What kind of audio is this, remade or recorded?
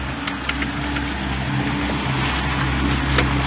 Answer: recorded